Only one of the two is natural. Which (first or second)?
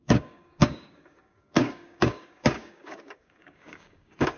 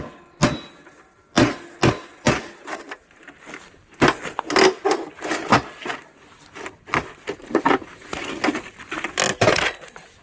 second